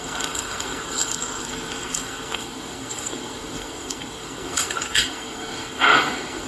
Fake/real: fake